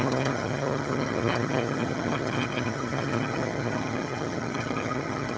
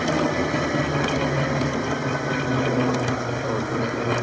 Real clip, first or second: second